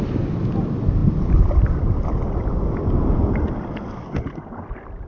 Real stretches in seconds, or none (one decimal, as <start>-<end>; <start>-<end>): 0.0-5.1